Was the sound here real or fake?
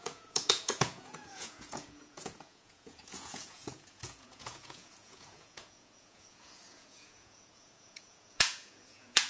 fake